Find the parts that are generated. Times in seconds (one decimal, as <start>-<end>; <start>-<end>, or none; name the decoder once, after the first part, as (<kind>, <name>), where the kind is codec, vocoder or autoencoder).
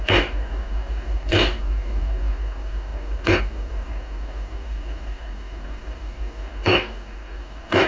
0.0-7.9 (codec, DAC)